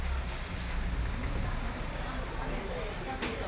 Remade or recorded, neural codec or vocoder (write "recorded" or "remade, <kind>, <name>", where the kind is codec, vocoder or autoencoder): recorded